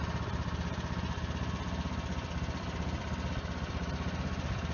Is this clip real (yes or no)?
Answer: yes